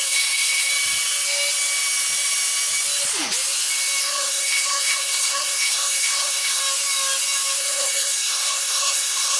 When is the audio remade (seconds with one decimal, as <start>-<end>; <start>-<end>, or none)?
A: 0.0-0.7; 4.0-6.6; 7.6-9.4